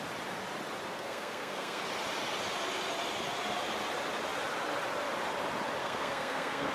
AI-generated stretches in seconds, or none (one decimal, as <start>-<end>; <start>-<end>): 0.9-1.8; 5.8-6.7